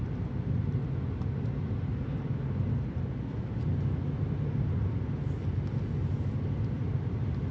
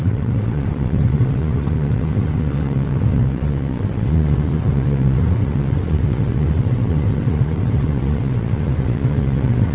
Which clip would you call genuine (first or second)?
first